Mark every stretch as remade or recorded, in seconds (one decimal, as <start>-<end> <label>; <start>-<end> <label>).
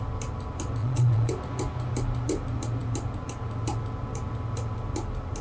0.0-0.8 recorded; 0.8-1.3 remade; 1.3-5.4 recorded